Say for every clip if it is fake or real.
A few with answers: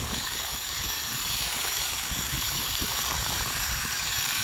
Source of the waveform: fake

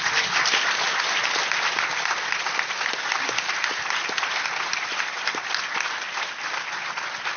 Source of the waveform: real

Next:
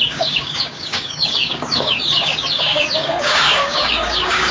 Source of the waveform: fake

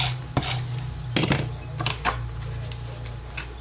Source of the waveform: real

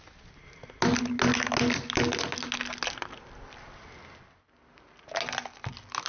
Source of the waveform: real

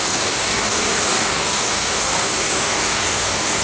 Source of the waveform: fake